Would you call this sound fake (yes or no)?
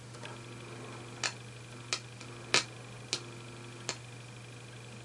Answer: no